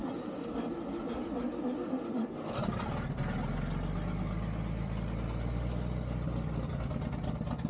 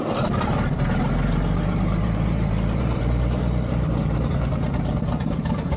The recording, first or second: first